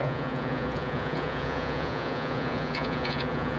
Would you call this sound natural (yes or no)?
no